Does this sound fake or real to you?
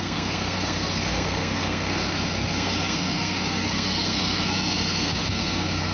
fake